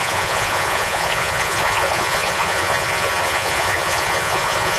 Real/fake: fake